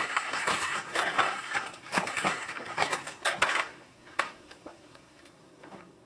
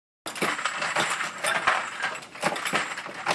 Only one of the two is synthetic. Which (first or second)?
first